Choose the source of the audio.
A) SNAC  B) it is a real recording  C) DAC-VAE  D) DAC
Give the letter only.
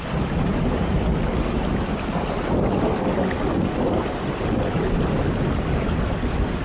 B